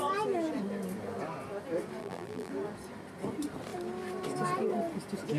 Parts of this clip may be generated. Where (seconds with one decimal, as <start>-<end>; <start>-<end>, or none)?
2.0-2.5